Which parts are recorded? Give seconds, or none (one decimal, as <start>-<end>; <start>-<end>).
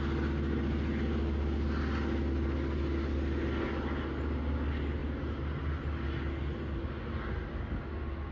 0.0-8.3